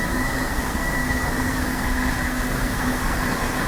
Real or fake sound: fake